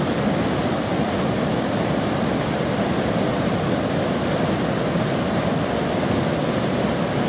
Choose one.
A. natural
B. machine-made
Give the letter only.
A